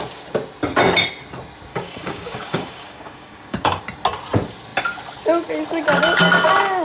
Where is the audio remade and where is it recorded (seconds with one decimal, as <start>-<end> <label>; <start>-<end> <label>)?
0.0-1.7 recorded; 1.7-3.8 remade; 3.8-6.8 recorded